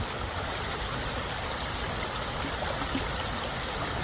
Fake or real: real